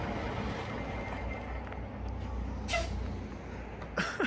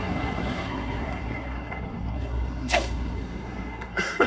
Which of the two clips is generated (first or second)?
second